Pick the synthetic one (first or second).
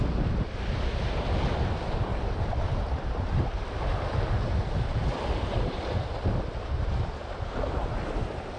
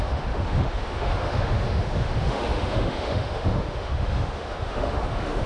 second